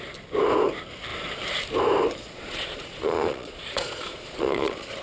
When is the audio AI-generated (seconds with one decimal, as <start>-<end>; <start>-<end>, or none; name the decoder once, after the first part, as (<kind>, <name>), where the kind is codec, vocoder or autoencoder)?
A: 2.2-5.0 (vocoder, Vocos)